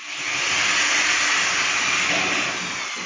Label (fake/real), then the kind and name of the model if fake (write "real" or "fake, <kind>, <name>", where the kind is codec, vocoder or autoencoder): real